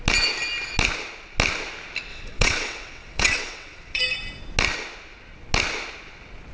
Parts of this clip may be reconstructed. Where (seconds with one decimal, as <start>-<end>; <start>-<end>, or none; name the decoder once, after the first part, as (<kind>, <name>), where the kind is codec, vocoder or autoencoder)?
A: 2.1-4.0 (vocoder, WaveNeXt)